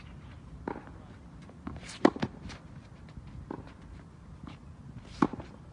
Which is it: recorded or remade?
recorded